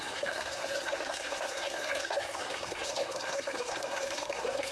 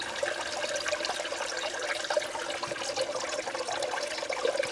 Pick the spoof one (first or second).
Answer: first